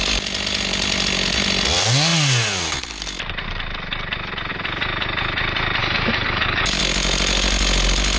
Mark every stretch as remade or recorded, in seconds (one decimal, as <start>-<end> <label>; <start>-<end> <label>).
0.0-5.8 recorded; 5.8-6.8 remade; 6.8-8.2 recorded